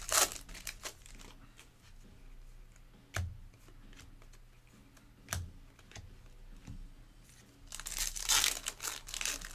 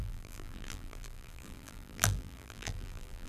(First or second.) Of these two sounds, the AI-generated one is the second